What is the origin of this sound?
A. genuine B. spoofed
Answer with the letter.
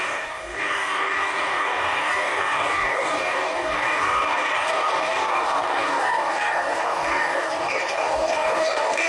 B